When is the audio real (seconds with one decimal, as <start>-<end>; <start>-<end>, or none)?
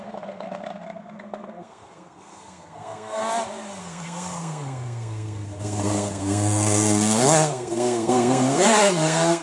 3.2-3.8